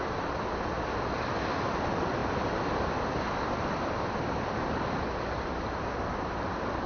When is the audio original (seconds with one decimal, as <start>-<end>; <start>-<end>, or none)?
0.0-2.2; 5.0-6.9